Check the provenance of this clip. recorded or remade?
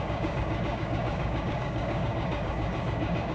remade